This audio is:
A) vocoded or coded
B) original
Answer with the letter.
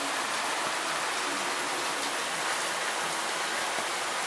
B